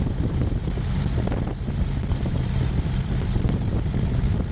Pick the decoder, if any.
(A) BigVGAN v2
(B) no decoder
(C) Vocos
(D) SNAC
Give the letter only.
B